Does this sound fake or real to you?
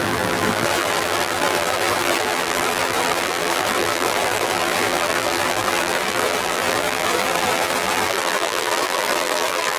fake